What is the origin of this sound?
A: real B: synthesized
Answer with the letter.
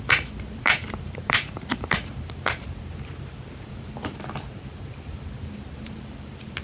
B